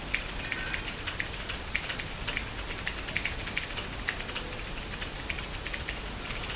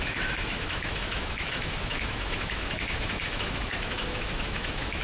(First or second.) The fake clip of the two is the second